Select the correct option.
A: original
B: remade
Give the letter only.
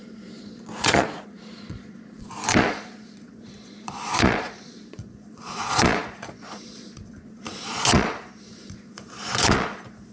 B